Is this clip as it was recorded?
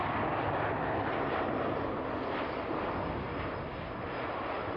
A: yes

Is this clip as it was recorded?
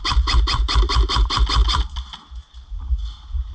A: yes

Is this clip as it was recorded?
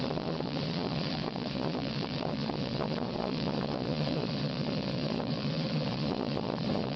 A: no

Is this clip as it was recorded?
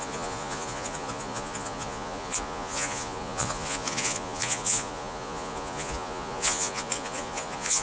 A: no